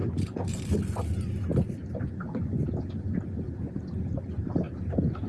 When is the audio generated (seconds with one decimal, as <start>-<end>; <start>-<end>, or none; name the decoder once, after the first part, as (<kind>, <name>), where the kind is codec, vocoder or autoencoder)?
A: none

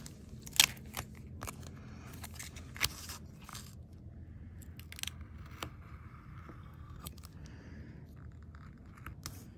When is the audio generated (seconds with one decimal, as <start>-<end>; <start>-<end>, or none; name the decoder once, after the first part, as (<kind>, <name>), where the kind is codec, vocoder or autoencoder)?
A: 6.6-7.1 (codec, SNAC)

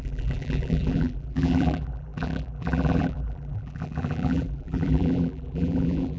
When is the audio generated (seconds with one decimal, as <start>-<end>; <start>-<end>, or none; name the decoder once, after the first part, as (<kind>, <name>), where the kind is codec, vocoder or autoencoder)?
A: 0.0-6.2 (vocoder, BigVGAN v2)

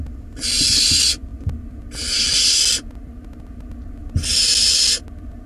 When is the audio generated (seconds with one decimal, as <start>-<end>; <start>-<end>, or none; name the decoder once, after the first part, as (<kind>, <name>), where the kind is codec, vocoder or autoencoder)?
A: none

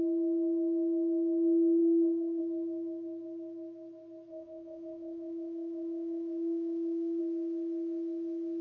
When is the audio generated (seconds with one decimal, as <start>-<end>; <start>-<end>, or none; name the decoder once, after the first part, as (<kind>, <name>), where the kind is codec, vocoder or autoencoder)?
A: 1.8-2.4 (autoencoder, DAC-VAE); 4.3-7.2

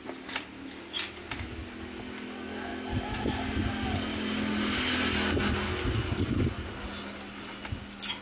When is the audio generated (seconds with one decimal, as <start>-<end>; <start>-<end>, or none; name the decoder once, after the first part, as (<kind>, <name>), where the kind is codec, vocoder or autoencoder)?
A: none

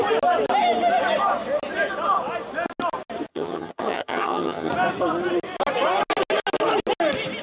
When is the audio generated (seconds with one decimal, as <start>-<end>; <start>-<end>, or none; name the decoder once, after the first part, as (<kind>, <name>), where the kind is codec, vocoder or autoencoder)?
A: 3.3-4.7 (vocoder, HiFi-GAN)